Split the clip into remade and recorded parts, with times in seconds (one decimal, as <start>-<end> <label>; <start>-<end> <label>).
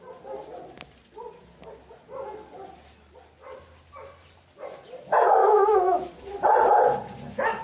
0.0-5.4 recorded; 5.4-6.1 remade; 6.1-7.6 recorded